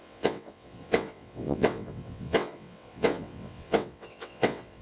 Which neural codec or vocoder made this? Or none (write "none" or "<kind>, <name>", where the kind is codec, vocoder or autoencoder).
vocoder, WaveNeXt